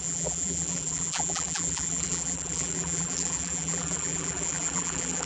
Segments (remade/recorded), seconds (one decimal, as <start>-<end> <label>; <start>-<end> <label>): 0.0-5.3 remade